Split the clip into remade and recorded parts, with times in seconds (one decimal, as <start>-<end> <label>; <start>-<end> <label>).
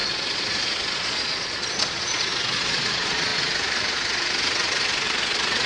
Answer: 0.0-5.7 remade